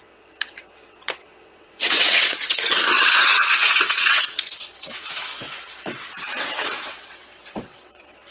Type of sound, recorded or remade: remade